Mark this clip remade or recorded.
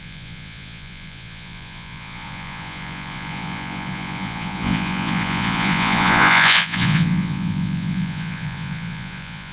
remade